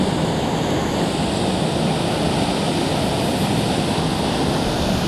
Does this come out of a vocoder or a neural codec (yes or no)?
no